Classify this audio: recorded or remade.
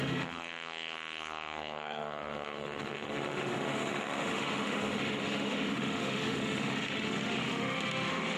remade